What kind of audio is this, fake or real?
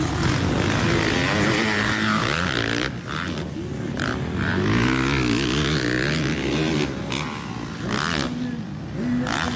real